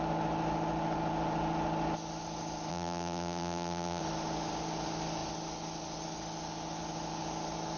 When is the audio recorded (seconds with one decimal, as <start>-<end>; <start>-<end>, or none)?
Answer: 0.0-2.7; 4.0-7.8